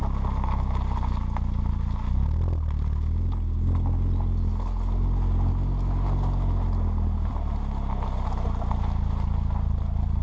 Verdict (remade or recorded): recorded